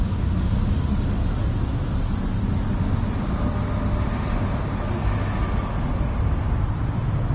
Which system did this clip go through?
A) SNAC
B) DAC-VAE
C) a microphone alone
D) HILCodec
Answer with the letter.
C